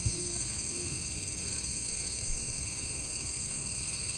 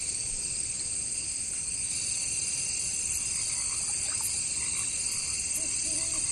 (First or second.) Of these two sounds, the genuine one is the second